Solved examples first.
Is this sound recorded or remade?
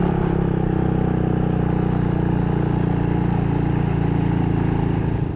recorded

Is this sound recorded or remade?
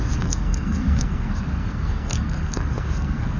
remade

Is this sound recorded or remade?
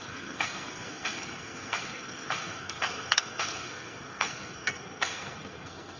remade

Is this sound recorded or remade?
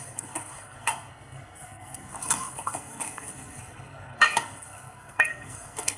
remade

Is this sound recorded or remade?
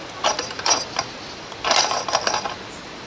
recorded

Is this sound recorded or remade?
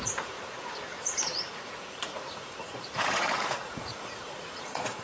remade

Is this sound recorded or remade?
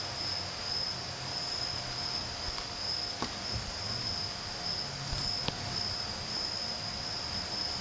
recorded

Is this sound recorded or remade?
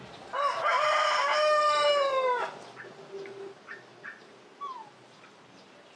recorded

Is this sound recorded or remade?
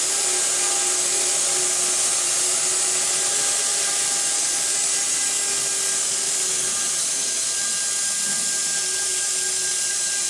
recorded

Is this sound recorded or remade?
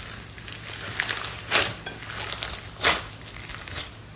recorded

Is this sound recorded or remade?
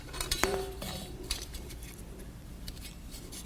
remade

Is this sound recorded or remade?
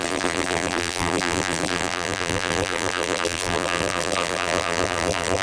remade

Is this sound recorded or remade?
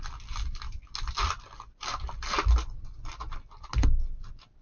recorded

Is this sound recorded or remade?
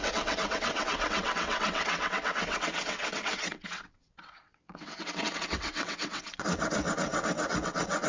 remade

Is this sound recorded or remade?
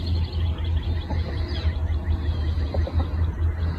recorded